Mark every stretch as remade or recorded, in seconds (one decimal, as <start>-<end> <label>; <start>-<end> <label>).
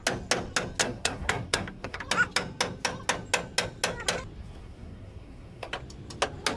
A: 0.0-0.8 recorded; 0.8-2.0 remade; 2.0-4.4 recorded; 4.4-5.7 remade; 5.7-6.6 recorded